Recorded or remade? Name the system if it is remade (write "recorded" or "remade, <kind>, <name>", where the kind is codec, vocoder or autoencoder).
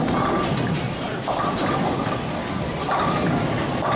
recorded